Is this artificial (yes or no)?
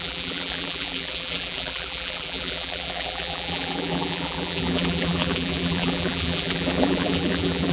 yes